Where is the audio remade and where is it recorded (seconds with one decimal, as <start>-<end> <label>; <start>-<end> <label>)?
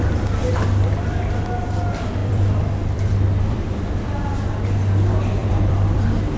0.0-2.2 recorded; 2.2-4.3 remade; 4.3-5.4 recorded; 5.4-6.0 remade; 6.0-6.4 recorded